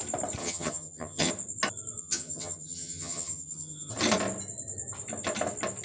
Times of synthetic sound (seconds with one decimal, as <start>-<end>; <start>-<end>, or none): 0.4-1.3; 2.0-3.9